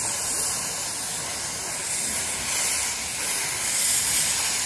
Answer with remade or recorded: recorded